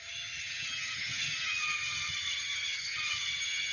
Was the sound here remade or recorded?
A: remade